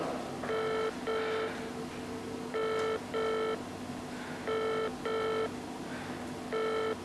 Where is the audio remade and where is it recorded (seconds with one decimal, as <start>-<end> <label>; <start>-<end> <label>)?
0.0-7.0 recorded